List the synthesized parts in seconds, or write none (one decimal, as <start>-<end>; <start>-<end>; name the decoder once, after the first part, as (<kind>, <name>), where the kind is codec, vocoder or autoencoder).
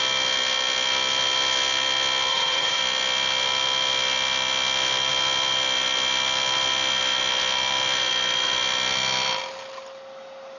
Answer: 2.3-2.8 (vocoder, HiFi-GAN)